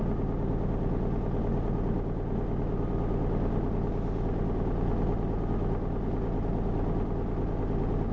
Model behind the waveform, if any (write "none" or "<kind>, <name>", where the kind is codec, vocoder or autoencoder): none